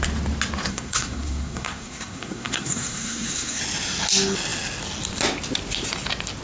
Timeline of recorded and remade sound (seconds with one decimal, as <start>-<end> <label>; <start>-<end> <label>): 0.0-0.7 recorded; 0.7-3.6 remade; 3.6-6.4 recorded